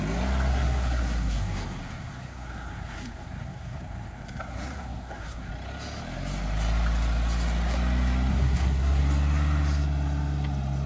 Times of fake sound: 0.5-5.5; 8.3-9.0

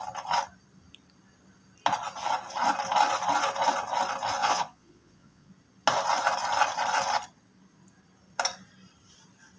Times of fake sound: 4.4-5.5

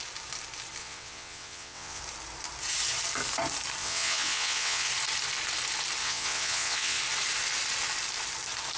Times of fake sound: 0.8-2.0; 3.8-4.9; 6.0-7.0

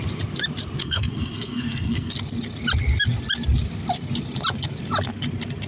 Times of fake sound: 0.8-2.1